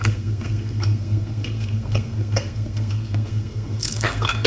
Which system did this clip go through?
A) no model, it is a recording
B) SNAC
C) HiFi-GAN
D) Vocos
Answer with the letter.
B